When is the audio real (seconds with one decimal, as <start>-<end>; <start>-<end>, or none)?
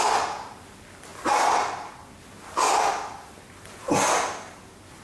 0.0-5.0